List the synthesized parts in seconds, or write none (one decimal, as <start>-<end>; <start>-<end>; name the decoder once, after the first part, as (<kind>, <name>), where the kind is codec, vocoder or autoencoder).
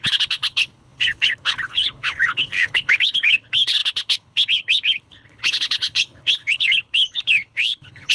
0.0-8.1 (codec, HILCodec)